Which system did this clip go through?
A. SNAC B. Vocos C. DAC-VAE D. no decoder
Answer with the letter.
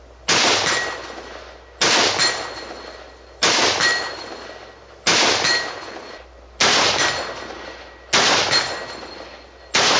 D